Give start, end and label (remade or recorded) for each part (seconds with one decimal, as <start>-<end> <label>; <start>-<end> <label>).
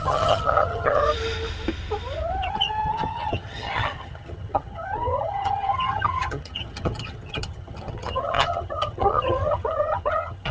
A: 0.0-1.0 remade; 1.0-2.5 recorded; 2.5-10.5 remade